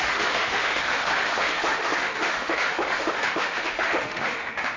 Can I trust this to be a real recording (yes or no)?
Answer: no